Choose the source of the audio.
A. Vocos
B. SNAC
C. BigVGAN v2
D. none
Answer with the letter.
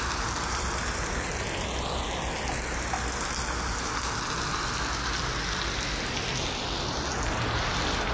D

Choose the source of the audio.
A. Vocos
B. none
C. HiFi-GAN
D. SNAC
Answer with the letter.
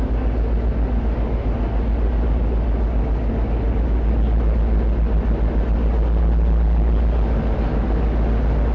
B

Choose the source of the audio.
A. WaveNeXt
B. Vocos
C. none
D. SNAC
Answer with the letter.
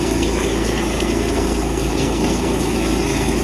D